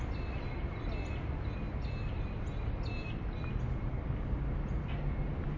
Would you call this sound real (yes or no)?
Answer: yes